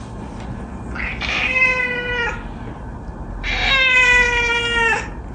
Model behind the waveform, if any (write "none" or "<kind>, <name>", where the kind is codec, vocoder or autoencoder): none